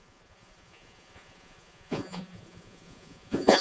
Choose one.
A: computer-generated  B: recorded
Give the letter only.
A